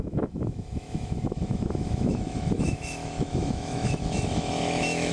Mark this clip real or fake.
fake